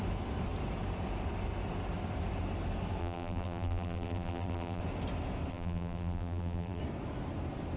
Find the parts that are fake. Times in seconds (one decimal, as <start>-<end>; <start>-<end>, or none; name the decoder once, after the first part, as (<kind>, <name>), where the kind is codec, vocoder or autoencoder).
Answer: 3.0-4.8 (vocoder, BigVGAN v2); 5.5-6.8